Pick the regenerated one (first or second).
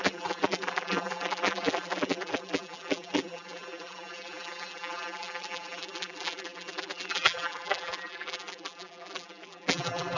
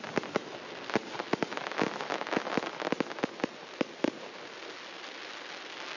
first